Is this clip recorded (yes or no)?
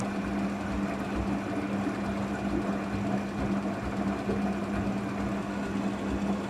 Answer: yes